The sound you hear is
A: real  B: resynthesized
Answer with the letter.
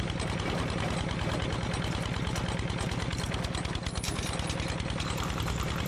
A